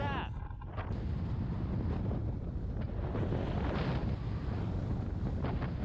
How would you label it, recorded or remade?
recorded